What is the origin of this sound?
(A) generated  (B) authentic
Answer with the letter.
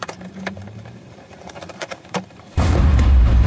A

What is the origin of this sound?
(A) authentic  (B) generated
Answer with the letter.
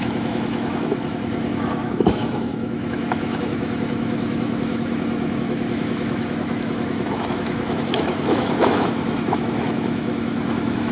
B